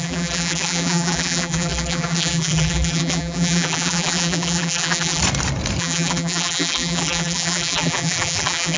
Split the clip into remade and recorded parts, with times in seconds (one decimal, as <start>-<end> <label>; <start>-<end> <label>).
0.0-5.2 remade; 5.2-5.8 recorded; 5.8-8.8 remade